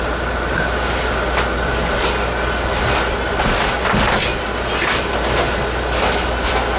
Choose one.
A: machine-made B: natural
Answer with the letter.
B